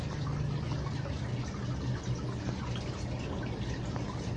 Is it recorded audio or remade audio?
recorded